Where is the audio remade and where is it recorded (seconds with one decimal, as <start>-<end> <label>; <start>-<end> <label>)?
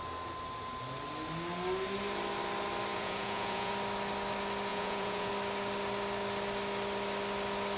0.0-2.9 recorded; 2.9-3.7 remade; 3.7-4.7 recorded; 4.7-5.3 remade; 5.3-7.8 recorded